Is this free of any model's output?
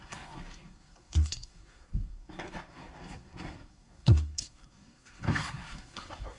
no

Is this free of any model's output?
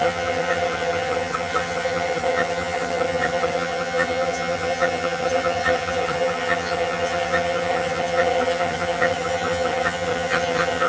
no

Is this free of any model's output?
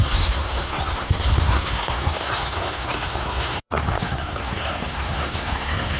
no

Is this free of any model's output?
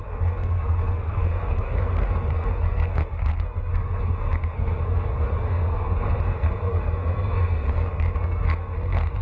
no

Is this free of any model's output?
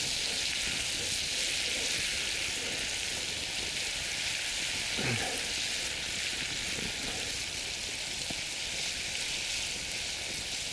yes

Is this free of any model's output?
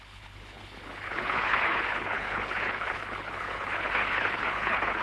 no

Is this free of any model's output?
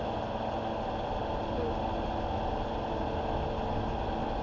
yes